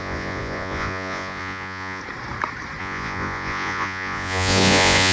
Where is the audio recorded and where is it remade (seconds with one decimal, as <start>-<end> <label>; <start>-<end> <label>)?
0.0-2.0 remade; 2.0-2.8 recorded; 2.8-5.1 remade